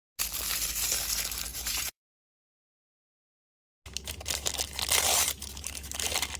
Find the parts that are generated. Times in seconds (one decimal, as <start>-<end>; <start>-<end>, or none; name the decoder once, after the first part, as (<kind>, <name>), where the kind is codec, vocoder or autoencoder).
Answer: 1.5-3.2 (vocoder, Vocos)